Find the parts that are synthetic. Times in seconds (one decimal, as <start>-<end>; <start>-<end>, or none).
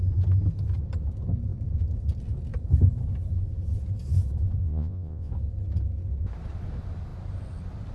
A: 4.6-5.3